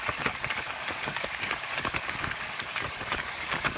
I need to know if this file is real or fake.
fake